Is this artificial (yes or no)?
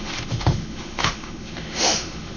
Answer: yes